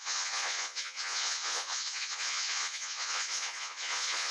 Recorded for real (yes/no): no